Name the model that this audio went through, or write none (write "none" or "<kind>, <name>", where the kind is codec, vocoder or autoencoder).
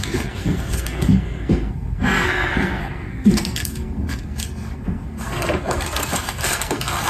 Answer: codec, SNAC